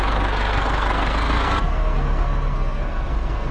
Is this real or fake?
fake